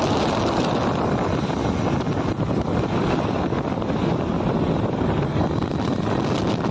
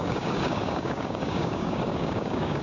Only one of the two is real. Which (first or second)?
first